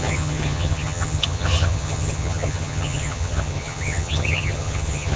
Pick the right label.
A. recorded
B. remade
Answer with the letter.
B